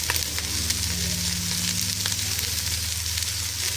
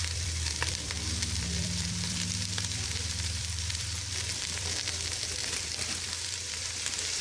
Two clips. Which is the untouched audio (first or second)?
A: first